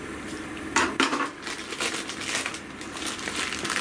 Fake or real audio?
real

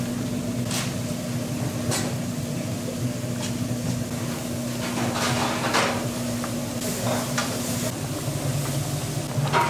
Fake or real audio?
real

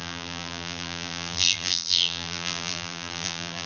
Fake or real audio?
fake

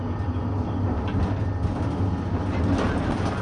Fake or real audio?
real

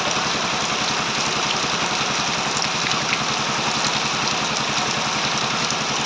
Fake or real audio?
real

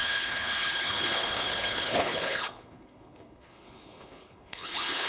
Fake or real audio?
fake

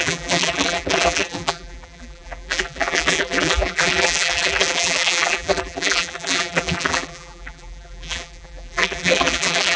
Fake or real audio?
fake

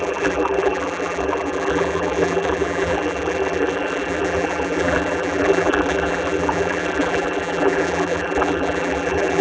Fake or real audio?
fake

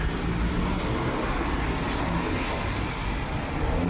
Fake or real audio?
real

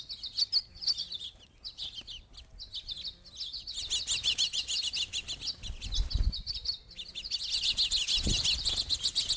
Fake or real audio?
real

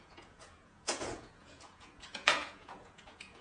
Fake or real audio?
fake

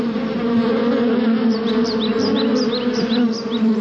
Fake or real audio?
real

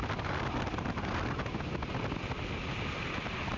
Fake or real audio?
real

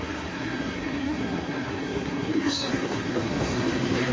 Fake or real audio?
fake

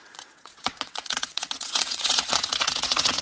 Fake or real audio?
fake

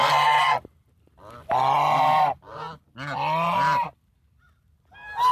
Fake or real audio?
real